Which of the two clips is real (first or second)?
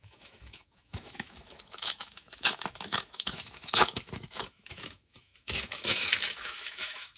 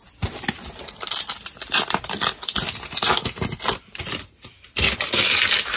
second